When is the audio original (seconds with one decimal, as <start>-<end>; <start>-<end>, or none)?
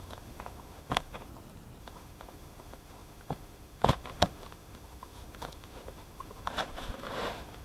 1.3-1.8